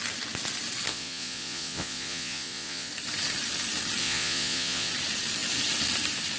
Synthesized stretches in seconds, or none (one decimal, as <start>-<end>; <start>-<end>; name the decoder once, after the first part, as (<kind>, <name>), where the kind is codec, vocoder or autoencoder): 0.9-2.9 (vocoder, Vocos); 4.0-4.9